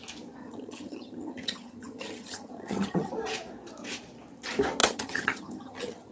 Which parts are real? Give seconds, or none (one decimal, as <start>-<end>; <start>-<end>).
0.0-0.4; 3.1-4.8